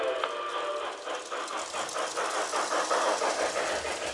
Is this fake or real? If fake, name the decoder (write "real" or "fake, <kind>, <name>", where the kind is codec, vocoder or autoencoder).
real